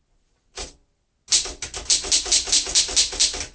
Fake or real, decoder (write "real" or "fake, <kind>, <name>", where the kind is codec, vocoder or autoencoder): real